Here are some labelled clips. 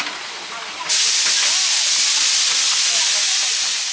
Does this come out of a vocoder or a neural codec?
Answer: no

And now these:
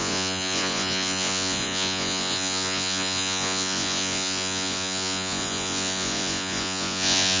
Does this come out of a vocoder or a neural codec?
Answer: yes